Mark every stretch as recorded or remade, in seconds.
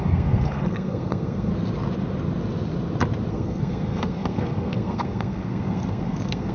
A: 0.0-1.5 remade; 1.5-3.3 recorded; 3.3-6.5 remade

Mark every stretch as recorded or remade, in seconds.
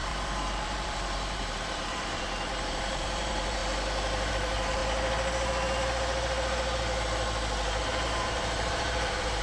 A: 0.0-3.6 remade; 3.6-4.3 recorded; 4.3-4.8 remade; 4.8-7.8 recorded; 7.8-9.4 remade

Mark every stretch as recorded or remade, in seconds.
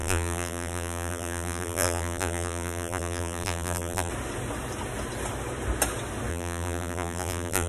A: 0.0-4.1 remade; 4.1-6.3 recorded; 6.3-7.7 remade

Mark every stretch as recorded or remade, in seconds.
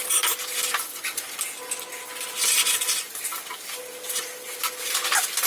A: 0.0-5.5 recorded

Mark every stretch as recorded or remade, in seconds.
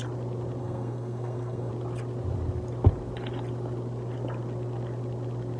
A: 0.0-0.6 recorded; 0.6-1.7 remade; 1.7-5.6 recorded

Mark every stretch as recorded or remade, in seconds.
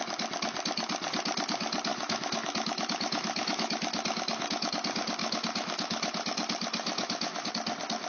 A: 0.0-1.9 recorded; 1.9-4.7 remade; 4.7-5.2 recorded; 5.2-7.5 remade; 7.5-8.1 recorded